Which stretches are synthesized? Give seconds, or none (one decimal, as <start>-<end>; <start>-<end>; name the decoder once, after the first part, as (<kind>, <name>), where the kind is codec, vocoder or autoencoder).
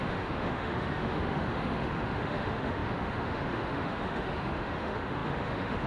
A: 0.0-5.9 (autoencoder, DAC-VAE)